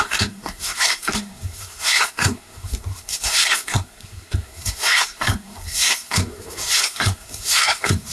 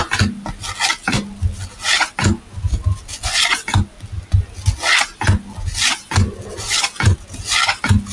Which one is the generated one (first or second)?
first